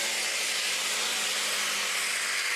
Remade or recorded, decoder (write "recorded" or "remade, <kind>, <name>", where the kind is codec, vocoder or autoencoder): recorded